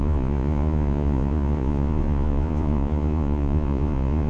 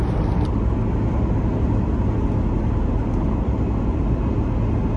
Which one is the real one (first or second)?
second